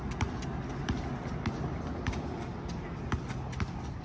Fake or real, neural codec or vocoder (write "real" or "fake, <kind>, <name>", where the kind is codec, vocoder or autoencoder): real